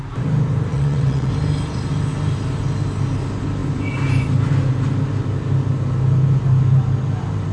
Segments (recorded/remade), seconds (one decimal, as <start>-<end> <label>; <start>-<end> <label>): 0.0-0.7 recorded; 0.7-1.3 remade; 1.3-7.5 recorded